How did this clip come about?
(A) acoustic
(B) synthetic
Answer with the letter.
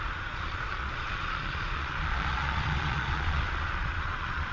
B